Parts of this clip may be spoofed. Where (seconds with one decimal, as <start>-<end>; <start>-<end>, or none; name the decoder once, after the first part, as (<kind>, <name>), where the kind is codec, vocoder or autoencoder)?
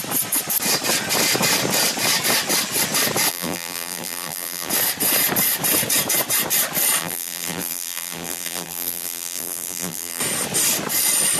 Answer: 3.3-4.7 (vocoder, BigVGAN v2); 7.0-10.2